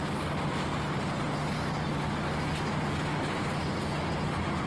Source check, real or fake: real